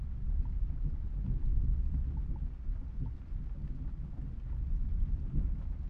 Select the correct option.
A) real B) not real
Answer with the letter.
A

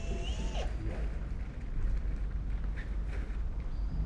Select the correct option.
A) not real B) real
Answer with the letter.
B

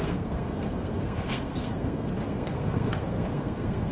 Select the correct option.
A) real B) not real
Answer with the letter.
B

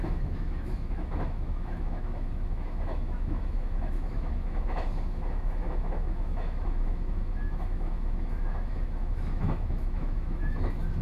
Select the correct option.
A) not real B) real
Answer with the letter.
A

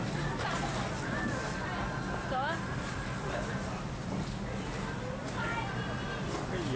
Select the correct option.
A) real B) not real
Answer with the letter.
A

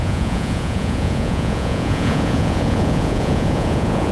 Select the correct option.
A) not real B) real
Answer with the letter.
A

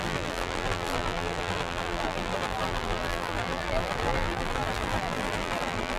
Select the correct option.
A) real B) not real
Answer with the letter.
B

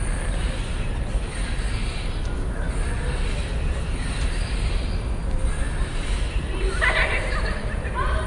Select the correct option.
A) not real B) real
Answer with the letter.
B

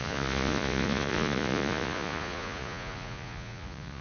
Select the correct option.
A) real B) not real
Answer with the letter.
B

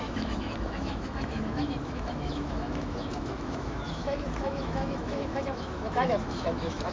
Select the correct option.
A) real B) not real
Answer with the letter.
B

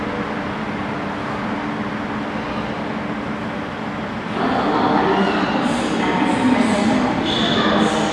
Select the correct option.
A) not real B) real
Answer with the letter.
B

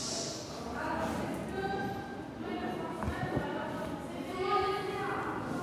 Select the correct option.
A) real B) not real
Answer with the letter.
A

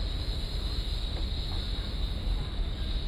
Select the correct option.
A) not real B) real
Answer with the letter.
B